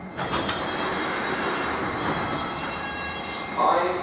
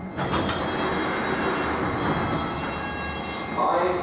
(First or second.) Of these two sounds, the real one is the second